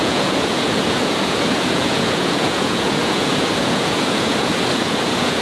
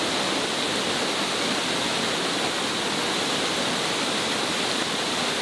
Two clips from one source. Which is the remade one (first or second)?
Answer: first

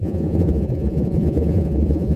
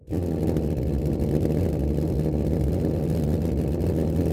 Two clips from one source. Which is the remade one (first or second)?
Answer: first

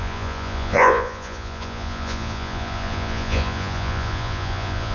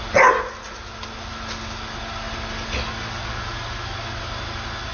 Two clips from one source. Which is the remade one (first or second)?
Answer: first